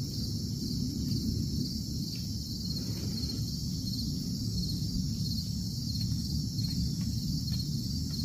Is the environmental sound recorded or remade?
recorded